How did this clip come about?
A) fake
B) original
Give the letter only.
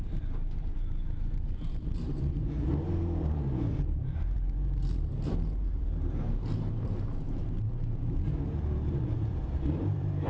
A